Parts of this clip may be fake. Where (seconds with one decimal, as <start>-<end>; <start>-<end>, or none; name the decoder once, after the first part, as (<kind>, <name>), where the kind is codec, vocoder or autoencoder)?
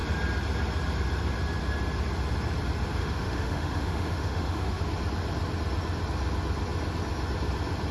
3.0-4.8 (autoencoder, DAC-VAE)